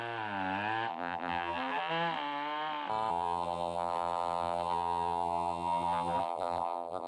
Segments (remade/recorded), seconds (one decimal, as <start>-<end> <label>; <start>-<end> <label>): 0.0-0.9 recorded; 0.9-1.9 remade; 1.9-3.1 recorded; 3.1-7.1 remade